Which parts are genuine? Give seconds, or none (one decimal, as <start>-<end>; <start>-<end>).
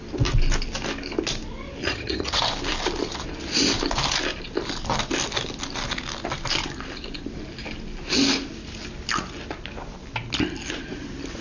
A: 0.0-1.8; 2.4-11.4